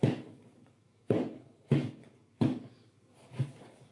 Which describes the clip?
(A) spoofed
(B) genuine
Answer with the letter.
A